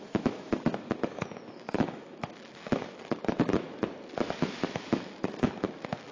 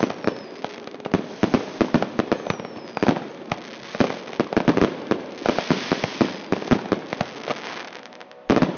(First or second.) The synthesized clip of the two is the first